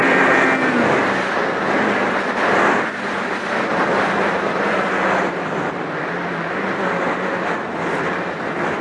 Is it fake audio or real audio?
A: fake